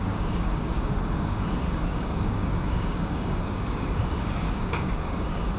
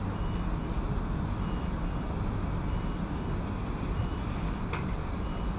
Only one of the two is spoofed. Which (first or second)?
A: first